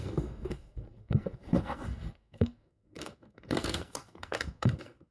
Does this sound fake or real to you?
fake